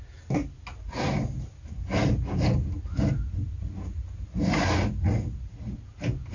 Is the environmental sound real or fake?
real